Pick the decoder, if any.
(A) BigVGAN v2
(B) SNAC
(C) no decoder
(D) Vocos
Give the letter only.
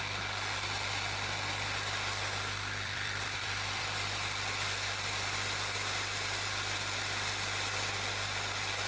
A